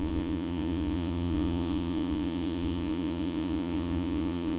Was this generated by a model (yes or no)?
yes